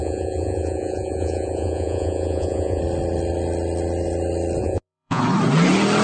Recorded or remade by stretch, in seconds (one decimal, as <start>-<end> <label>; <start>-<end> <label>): 0.0-2.8 remade; 2.8-4.6 recorded; 4.6-5.2 remade; 5.2-6.0 recorded